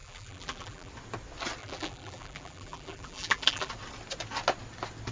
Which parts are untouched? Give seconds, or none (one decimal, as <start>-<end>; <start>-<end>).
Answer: 0.9-1.6; 3.7-5.1